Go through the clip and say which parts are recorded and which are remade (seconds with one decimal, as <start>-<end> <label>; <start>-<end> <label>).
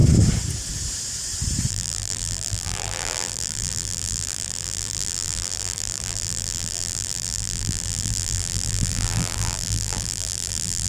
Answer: 0.0-1.7 recorded; 1.7-10.9 remade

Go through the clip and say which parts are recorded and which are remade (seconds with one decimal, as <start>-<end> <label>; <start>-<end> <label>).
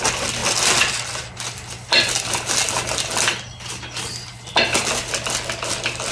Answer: 0.0-6.1 recorded